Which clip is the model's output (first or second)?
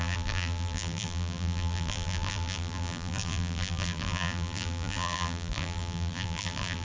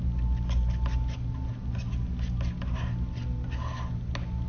first